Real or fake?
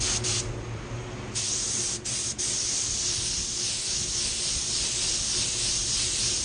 real